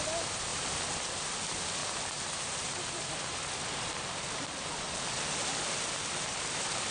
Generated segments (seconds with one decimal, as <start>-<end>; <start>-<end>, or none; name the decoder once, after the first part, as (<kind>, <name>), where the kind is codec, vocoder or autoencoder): 0.0-6.9 (vocoder, BigVGAN v2)